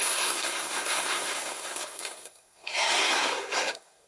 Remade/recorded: remade